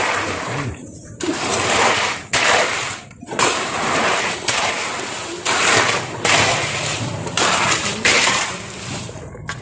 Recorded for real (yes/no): no